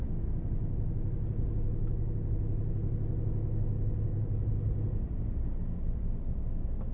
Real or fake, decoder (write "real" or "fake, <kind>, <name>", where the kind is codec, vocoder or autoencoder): real